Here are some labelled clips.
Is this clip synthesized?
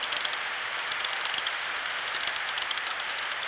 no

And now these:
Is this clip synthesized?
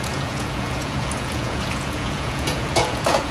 yes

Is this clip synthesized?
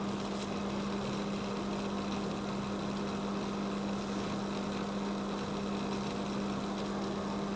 no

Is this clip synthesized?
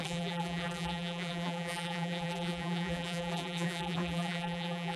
yes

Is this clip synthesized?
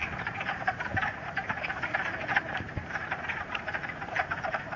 yes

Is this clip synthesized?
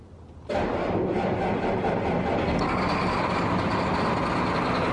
no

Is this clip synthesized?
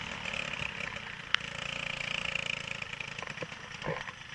no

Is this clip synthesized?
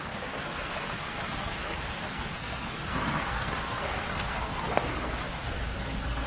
yes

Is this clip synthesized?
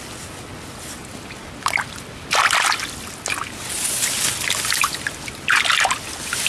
no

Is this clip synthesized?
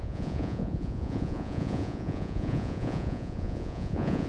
yes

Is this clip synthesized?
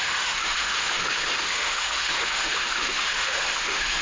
yes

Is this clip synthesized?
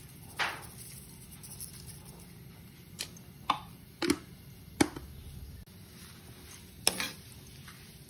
no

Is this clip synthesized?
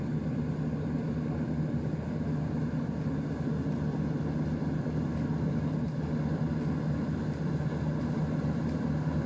no